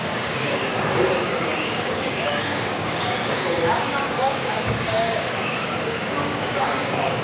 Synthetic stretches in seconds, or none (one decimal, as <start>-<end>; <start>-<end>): 0.0-0.6; 1.1-7.2